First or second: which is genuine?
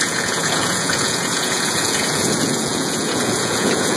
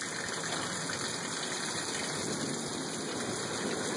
second